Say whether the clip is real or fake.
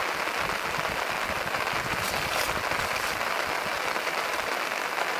real